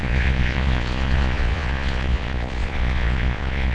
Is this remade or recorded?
remade